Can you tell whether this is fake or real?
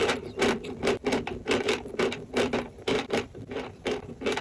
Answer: fake